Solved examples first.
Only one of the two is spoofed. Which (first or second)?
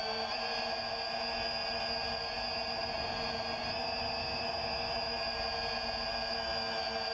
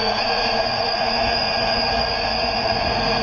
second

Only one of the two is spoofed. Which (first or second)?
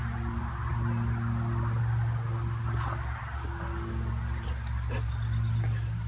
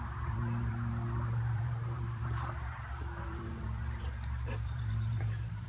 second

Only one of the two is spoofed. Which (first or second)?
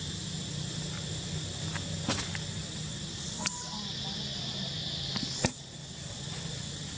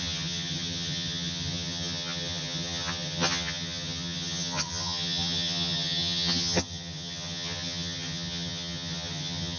second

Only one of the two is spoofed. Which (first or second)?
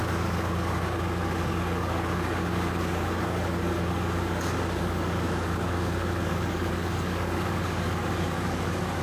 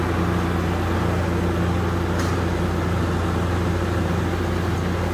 first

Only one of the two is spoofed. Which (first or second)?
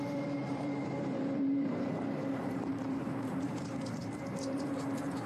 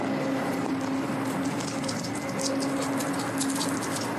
first